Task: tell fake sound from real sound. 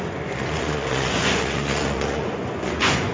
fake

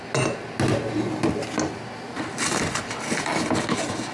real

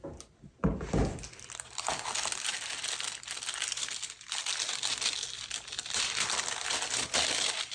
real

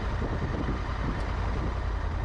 real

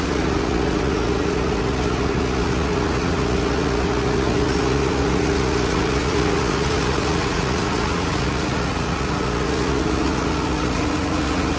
fake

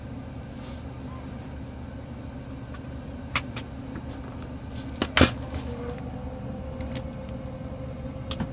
real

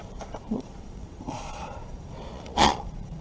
fake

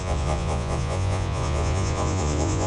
fake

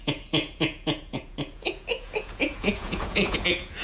fake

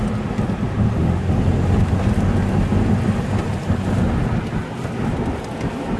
real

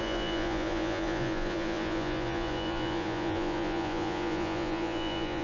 fake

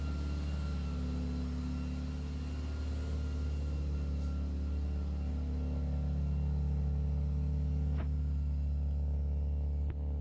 real